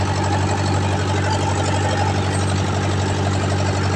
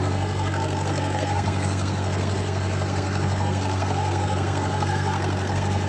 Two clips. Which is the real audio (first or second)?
first